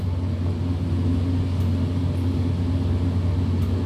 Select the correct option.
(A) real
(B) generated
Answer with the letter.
A